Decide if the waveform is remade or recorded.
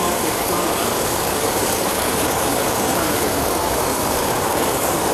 remade